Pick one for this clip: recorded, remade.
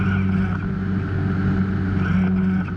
recorded